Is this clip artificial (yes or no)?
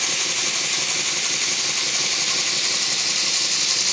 no